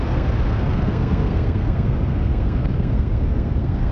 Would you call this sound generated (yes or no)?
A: yes